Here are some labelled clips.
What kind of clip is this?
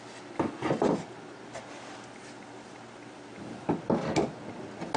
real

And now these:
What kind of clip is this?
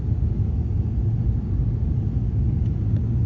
real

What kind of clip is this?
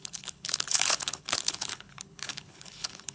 fake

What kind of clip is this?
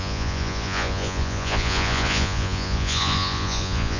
fake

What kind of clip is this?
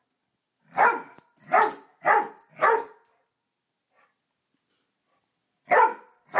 real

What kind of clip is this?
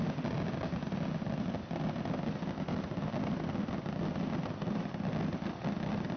real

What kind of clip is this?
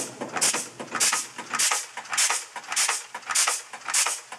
real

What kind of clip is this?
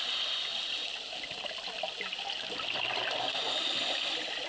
real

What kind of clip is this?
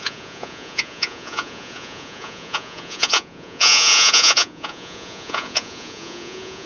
fake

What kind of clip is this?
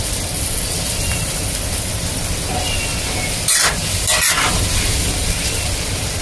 real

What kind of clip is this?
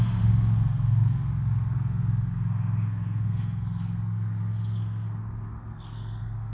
fake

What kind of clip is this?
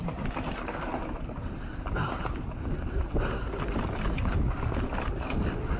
real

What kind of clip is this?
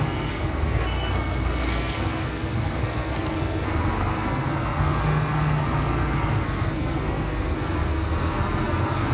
fake